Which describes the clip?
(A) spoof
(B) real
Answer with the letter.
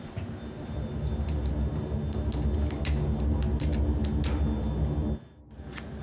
B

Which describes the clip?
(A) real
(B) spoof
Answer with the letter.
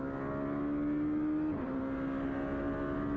A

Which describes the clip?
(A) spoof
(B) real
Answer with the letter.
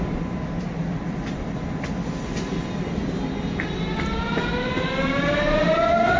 B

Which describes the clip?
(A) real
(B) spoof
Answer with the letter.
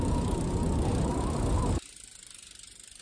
A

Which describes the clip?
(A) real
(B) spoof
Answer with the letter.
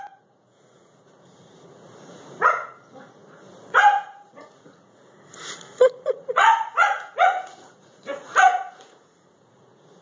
B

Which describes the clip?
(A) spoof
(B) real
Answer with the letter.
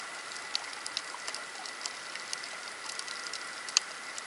B